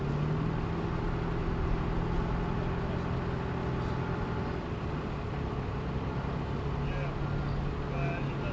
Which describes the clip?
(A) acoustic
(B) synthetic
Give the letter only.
A